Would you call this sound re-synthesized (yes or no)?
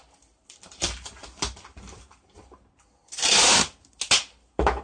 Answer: no